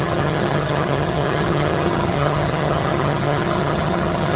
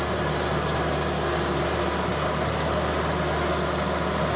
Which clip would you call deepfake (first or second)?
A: first